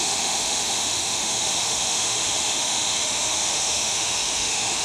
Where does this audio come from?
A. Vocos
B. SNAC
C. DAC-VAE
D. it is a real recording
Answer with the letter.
C